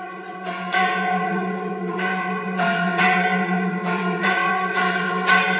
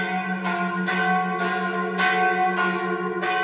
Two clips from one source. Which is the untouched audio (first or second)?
second